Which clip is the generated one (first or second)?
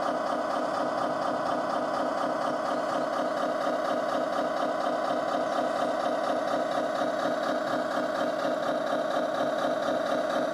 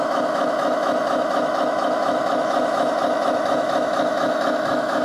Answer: second